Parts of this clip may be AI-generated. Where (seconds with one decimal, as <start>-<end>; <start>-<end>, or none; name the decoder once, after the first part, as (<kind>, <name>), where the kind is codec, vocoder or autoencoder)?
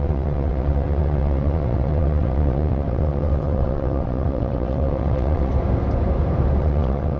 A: 0.0-5.5 (vocoder, WaveNeXt); 6.6-7.2